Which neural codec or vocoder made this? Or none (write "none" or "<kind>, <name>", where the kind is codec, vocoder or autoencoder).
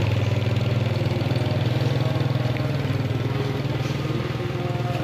none